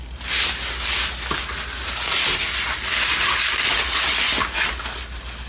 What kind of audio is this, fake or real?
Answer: real